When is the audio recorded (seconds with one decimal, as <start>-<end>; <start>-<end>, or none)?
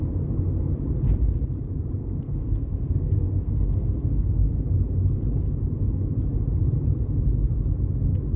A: 0.0-2.0; 4.6-8.4